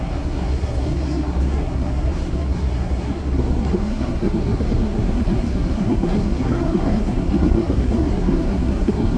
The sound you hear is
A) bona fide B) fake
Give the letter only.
B